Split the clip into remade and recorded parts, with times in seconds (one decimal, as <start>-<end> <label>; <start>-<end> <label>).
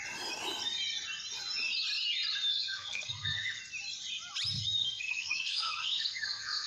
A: 0.0-2.5 recorded; 2.5-3.6 remade; 3.6-4.8 recorded; 4.8-6.7 remade